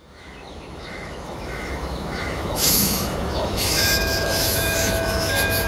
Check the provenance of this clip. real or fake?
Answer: fake